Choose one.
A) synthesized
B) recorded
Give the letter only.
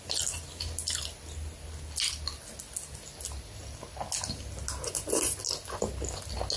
B